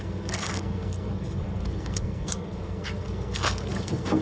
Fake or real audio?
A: fake